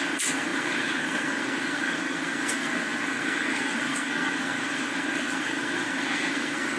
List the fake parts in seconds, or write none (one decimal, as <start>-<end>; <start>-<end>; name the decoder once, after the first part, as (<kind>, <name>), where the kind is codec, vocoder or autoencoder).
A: 0.0-6.8 (codec, SNAC)